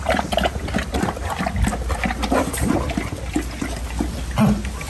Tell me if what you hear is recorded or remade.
recorded